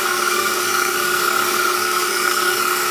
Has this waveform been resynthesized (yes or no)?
yes